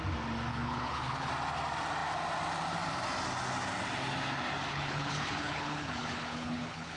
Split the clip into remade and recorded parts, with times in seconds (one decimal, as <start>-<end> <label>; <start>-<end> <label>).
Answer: 0.0-0.5 recorded; 0.5-1.3 remade; 1.3-4.7 recorded; 4.7-7.0 remade